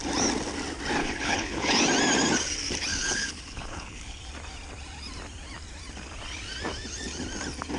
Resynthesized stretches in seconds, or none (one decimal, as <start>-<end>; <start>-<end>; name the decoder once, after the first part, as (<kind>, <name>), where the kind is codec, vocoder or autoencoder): 1.0-1.8 (codec, HILCodec); 2.9-4.2